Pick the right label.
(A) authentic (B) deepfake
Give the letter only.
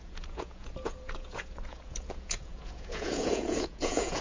B